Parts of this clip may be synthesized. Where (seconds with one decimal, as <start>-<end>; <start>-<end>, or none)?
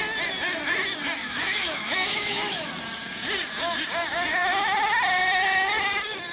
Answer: 1.2-2.7